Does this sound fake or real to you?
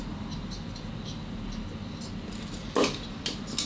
real